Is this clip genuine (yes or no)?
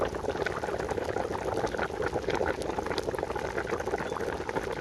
yes